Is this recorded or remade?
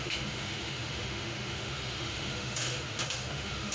remade